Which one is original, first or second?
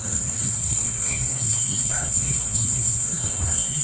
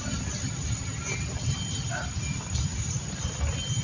second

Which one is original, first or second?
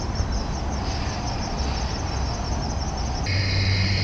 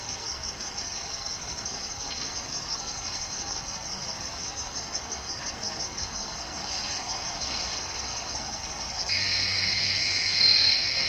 first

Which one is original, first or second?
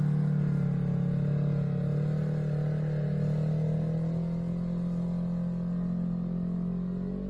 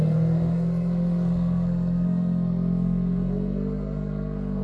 first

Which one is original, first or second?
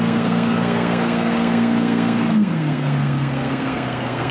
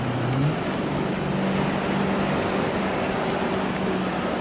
second